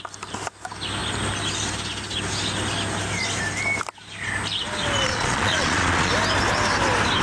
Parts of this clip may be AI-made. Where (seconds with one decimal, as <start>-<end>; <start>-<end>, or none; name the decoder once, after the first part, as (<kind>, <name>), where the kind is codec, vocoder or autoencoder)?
5.1-6.1 (vocoder, Vocos)